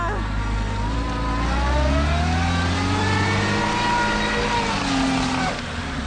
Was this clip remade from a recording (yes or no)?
no